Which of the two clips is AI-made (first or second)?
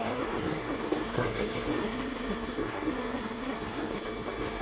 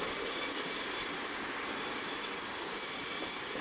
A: first